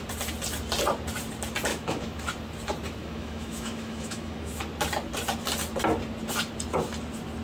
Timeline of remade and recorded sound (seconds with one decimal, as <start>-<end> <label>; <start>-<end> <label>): 0.0-1.7 recorded; 1.7-2.2 remade; 2.2-3.0 recorded; 3.0-4.6 remade; 4.6-7.4 recorded

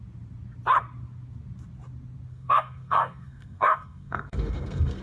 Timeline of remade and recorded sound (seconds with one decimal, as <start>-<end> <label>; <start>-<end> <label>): 0.0-2.3 recorded; 2.3-5.0 remade

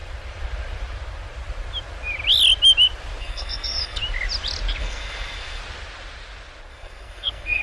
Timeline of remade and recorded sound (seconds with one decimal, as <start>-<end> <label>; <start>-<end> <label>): 0.0-3.2 recorded; 3.2-4.0 remade; 4.0-4.8 recorded; 4.8-5.6 remade; 5.6-6.7 recorded; 6.7-7.6 remade

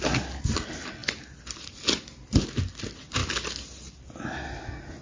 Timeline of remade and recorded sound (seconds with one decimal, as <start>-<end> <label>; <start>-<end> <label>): 0.0-5.0 recorded

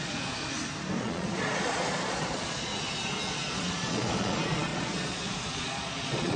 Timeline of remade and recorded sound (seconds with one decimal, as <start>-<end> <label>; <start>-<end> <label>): 0.0-0.4 remade; 0.4-1.0 recorded; 1.0-2.7 remade; 2.7-3.3 recorded; 3.3-6.4 remade

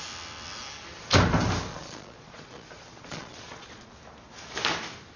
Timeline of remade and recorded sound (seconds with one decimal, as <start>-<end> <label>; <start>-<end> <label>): 0.0-1.7 recorded; 1.7-3.9 remade; 3.9-5.2 recorded